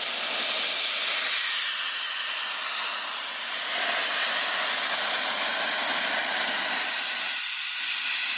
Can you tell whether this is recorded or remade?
recorded